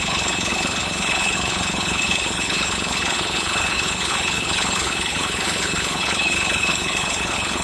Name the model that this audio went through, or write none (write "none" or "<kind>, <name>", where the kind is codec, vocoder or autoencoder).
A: codec, HILCodec